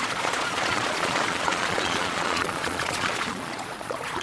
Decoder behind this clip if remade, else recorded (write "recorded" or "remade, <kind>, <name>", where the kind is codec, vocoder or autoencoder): remade, vocoder, Vocos